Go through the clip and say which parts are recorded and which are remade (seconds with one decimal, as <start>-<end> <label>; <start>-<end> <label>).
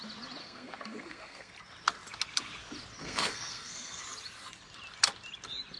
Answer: 0.0-0.4 recorded; 0.4-1.5 remade; 1.5-3.0 recorded; 3.0-4.0 remade; 4.0-5.8 recorded